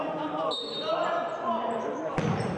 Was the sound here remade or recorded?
recorded